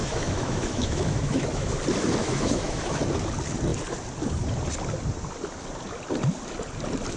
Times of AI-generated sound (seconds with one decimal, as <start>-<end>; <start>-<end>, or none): 0.0-1.8; 2.2-3.0